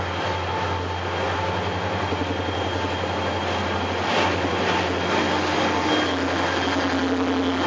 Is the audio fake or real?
real